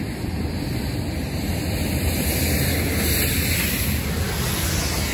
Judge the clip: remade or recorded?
recorded